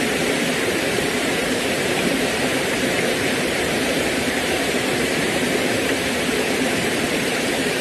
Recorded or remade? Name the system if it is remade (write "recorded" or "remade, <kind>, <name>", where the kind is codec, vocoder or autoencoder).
remade, vocoder, BigVGAN v2